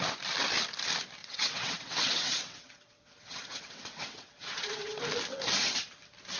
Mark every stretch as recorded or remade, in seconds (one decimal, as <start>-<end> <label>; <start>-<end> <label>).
0.0-1.2 recorded; 1.2-5.0 remade; 5.0-6.4 recorded